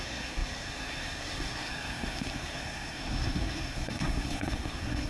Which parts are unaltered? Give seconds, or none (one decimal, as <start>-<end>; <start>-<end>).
none